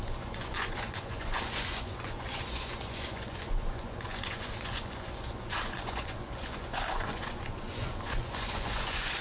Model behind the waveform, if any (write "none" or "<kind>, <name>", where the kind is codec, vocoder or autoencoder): vocoder, Vocos